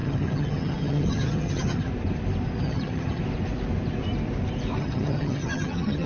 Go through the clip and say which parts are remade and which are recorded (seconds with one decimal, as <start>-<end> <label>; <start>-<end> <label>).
0.0-1.9 remade; 1.9-2.6 recorded; 2.6-3.2 remade; 3.2-4.8 recorded; 4.8-6.1 remade